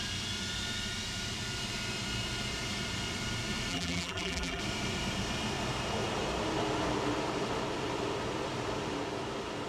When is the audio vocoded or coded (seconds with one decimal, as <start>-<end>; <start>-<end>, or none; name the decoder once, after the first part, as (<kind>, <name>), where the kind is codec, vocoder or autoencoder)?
3.7-4.6 (vocoder, BigVGAN v2)